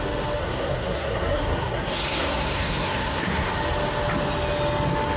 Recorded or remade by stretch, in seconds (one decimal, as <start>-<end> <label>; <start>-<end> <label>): 0.0-0.4 recorded; 0.4-3.5 remade; 3.5-5.2 recorded